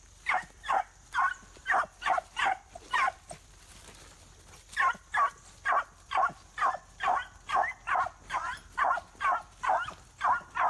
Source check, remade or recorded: recorded